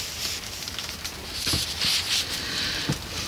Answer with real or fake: real